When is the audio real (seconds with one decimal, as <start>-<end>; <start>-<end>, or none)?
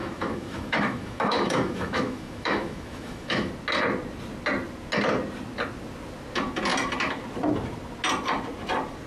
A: 3.5-9.1